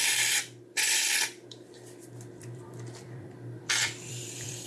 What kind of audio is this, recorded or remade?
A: remade